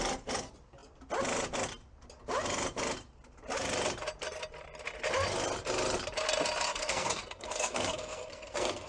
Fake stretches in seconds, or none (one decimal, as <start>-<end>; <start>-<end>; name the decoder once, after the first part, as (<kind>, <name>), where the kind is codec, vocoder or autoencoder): 6.7-8.9 (codec, SNAC)

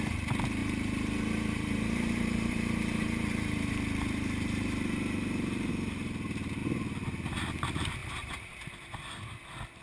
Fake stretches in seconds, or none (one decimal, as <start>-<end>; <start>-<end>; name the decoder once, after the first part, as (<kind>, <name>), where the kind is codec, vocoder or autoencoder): 0.6-5.7 (vocoder, BigVGAN v2); 8.0-9.1

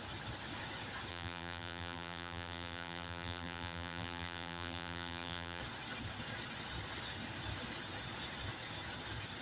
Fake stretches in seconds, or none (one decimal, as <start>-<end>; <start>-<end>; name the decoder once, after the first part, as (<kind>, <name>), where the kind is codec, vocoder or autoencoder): 1.1-5.6 (vocoder, BigVGAN v2)

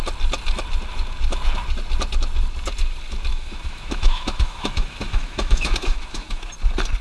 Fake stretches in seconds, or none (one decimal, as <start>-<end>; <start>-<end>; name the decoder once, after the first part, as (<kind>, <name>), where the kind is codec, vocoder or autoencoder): 3.3-6.5 (autoencoder, DAC-VAE)